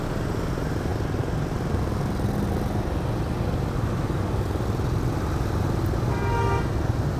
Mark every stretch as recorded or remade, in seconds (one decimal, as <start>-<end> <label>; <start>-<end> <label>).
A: 0.0-7.2 recorded